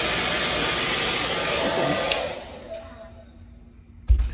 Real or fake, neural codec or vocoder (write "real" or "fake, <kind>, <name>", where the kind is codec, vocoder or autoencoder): real